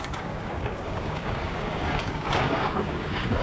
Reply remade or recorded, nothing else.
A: remade